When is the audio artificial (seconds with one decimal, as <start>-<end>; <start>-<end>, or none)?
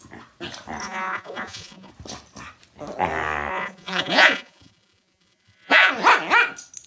0.8-1.9; 3.5-5.9